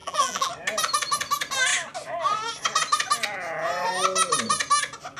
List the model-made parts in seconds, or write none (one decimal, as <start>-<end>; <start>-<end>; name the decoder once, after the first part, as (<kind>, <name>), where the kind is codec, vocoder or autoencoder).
0.0-0.5 (vocoder, BigVGAN v2)